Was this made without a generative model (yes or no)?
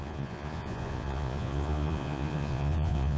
no